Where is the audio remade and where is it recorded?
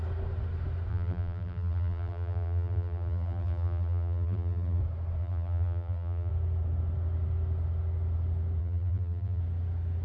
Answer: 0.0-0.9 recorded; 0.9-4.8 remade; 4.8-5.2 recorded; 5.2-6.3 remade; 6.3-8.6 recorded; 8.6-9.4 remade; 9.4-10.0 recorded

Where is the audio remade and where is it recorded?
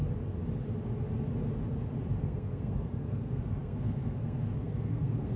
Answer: 0.0-2.2 recorded; 2.2-5.4 remade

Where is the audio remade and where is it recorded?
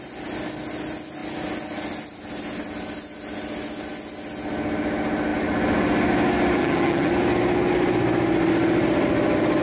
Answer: 0.0-6.6 recorded; 6.6-7.1 remade; 7.1-9.6 recorded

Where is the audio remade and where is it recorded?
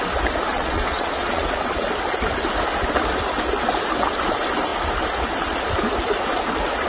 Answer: 0.0-0.5 recorded; 0.5-1.4 remade; 1.4-6.9 recorded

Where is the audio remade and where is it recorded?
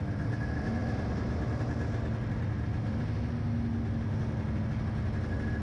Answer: 0.0-5.6 recorded